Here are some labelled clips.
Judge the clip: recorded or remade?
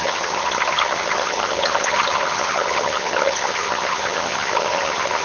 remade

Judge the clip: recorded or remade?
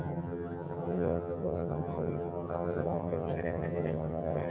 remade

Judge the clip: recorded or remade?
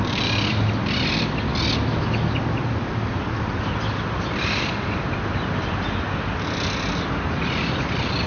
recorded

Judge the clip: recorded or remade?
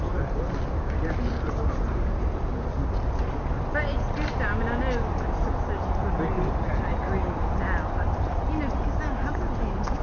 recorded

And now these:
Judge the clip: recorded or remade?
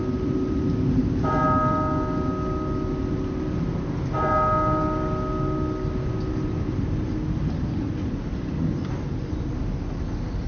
recorded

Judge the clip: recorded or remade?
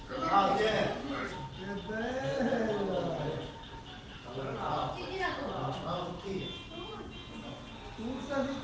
recorded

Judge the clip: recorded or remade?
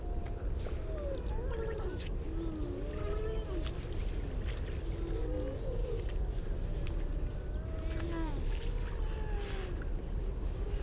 recorded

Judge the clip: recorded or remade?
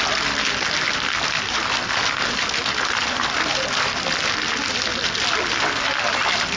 recorded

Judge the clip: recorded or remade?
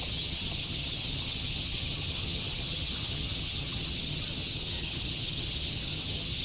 remade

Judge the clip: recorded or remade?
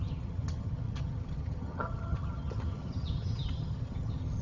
remade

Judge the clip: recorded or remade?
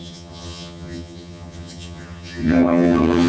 remade